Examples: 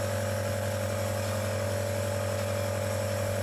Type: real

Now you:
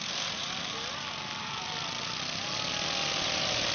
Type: real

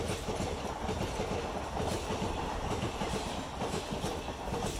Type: real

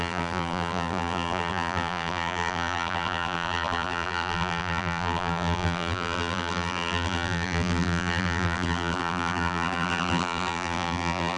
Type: fake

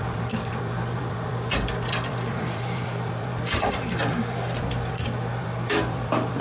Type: fake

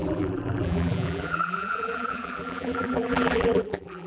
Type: fake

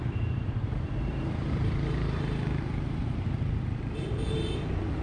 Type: fake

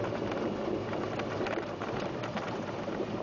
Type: fake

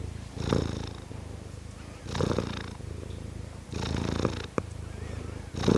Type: real